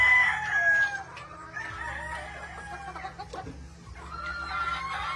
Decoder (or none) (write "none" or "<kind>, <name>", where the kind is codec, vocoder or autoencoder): none